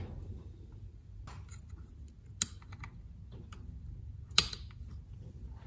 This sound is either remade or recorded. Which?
recorded